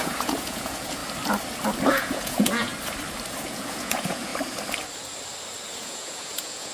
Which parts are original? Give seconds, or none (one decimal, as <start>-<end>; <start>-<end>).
1.0-1.9; 2.7-3.4; 4.3-5.8